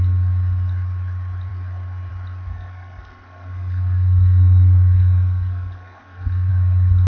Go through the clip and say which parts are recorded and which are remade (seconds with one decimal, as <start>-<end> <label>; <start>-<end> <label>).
0.0-2.5 recorded; 2.5-6.5 remade; 6.5-7.1 recorded